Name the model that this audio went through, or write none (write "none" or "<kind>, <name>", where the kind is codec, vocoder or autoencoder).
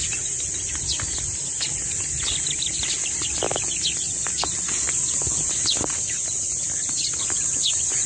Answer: none